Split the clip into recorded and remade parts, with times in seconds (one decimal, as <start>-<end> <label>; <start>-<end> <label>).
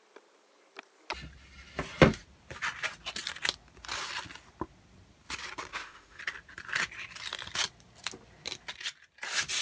0.0-5.7 recorded; 5.7-6.2 remade; 6.2-9.6 recorded